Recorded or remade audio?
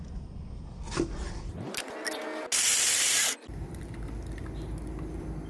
recorded